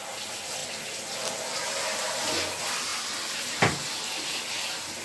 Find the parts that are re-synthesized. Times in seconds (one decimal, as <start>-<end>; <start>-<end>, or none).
none